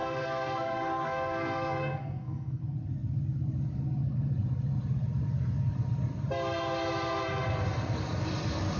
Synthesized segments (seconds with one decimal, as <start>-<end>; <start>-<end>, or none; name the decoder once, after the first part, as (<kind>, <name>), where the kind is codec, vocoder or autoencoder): 0.0-2.6 (codec, SNAC)